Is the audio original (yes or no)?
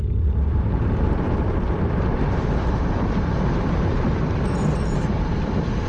no